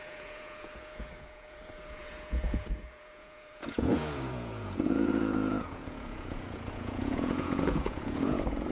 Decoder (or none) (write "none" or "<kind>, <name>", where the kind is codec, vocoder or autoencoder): vocoder, Vocos